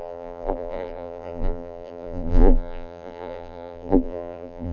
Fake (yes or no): yes